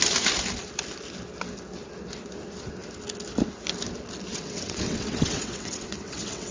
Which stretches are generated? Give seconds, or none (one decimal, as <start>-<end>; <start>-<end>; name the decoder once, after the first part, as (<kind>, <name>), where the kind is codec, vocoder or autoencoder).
4.3-6.5 (vocoder, WaveNeXt)